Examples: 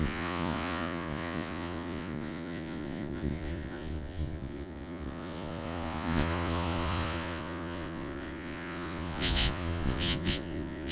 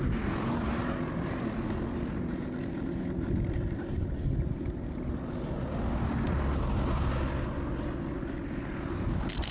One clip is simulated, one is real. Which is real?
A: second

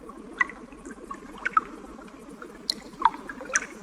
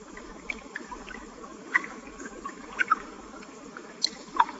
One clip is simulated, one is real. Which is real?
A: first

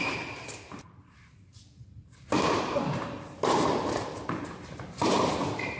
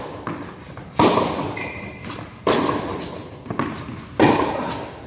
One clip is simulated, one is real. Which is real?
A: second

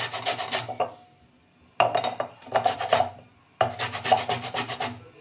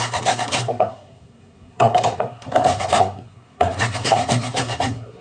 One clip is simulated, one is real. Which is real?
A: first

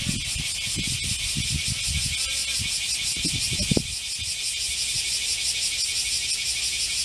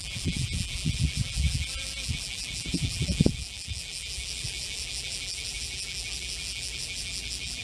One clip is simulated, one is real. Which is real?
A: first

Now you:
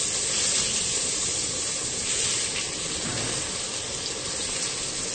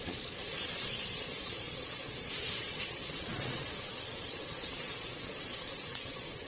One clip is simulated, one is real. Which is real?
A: first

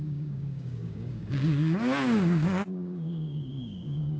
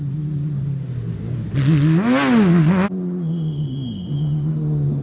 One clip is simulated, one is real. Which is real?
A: second